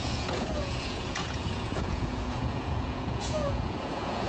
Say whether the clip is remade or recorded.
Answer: remade